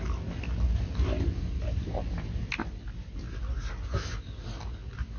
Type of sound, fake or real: real